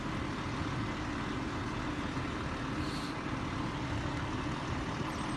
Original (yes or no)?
yes